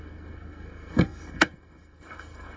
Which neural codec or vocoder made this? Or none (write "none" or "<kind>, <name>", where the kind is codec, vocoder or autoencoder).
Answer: codec, SNAC